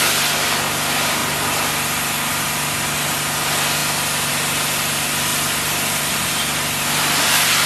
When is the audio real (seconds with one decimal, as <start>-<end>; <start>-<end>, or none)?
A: 0.0-7.7